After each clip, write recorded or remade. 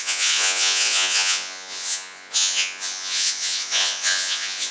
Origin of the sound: remade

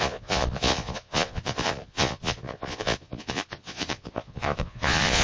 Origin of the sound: remade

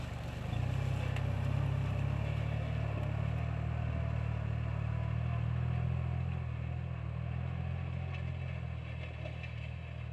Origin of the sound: recorded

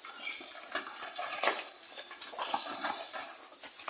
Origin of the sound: recorded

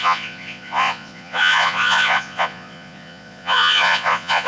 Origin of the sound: remade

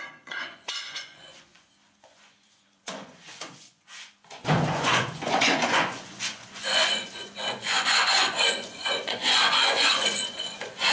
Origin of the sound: remade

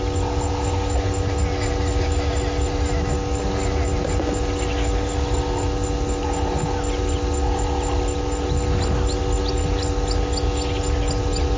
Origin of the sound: recorded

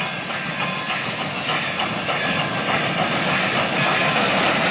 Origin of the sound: recorded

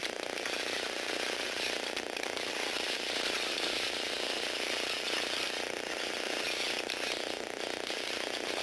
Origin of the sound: recorded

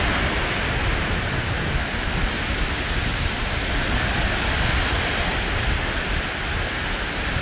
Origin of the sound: recorded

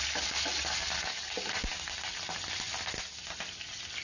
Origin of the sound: recorded